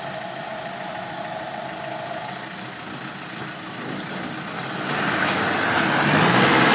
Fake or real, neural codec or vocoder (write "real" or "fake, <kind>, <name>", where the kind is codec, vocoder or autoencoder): real